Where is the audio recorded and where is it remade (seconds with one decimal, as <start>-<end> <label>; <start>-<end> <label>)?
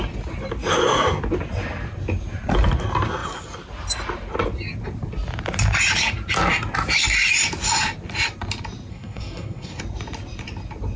0.0-8.9 recorded; 8.9-9.8 remade; 9.8-11.0 recorded